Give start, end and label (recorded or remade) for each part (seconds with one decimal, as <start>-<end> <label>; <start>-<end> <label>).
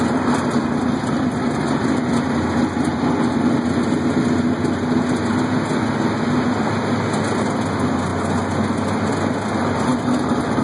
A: 0.0-10.6 recorded